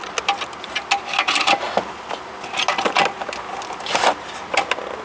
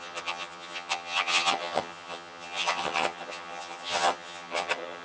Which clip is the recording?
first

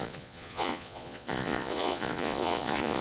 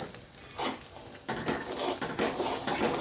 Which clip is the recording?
second